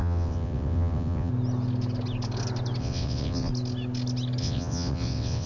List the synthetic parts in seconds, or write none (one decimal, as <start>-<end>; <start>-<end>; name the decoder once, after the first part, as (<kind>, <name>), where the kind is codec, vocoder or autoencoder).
0.0-1.3 (vocoder, WaveNeXt); 2.8-3.5; 4.4-5.5